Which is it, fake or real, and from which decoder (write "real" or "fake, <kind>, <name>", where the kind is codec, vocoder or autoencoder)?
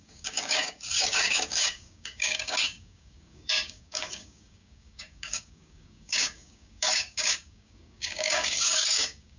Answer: fake, codec, DAC